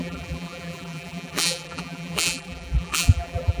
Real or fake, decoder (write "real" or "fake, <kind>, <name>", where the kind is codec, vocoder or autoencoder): fake, vocoder, BigVGAN v2